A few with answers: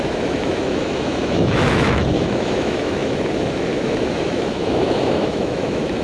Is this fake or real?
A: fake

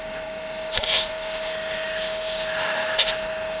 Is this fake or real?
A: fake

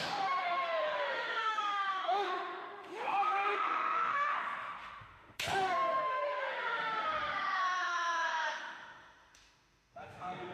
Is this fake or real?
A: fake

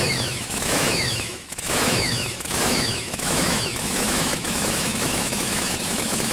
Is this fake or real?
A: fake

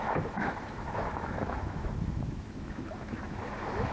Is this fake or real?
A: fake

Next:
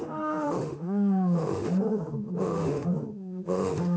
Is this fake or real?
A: fake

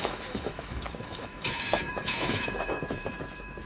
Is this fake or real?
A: fake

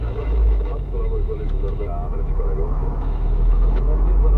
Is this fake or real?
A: fake